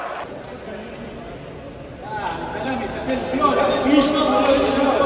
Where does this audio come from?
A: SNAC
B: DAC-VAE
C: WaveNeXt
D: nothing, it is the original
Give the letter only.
D